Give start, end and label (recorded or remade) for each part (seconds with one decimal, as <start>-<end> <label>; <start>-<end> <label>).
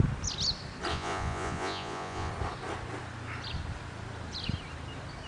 0.0-0.9 recorded; 0.9-2.3 remade; 2.3-5.3 recorded